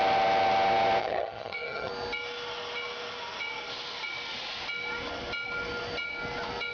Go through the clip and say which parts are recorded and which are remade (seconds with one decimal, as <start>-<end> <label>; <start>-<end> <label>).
0.0-1.0 recorded; 1.0-1.9 remade; 1.9-6.7 recorded